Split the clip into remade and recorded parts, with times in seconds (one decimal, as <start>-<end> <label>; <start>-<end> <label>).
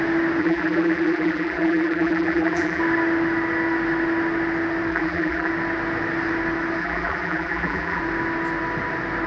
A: 0.0-0.4 recorded; 0.4-2.8 remade; 2.8-4.9 recorded; 4.9-5.5 remade; 5.5-6.8 recorded; 6.8-8.0 remade; 8.0-9.3 recorded